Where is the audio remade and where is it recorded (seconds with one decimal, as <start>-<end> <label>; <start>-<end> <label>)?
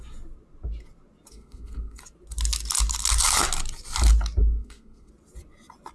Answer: 0.0-1.3 recorded; 1.3-2.0 remade; 2.0-4.4 recorded; 4.4-5.1 remade; 5.1-5.9 recorded